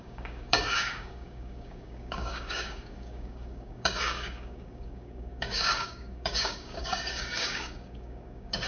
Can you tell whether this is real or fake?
fake